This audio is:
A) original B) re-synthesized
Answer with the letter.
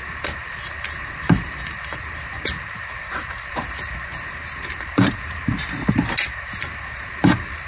B